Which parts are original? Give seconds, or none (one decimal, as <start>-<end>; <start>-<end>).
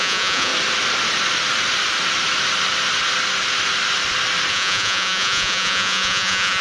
0.5-4.5